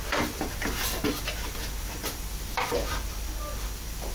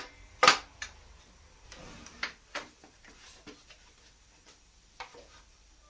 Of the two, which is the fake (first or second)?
second